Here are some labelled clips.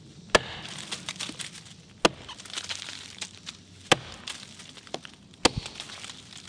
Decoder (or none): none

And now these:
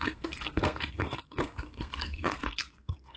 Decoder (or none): codec, SNAC